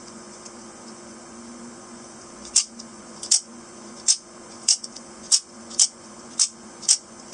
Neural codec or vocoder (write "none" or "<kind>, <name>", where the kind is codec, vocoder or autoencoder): vocoder, Vocos